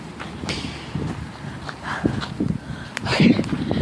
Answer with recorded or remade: recorded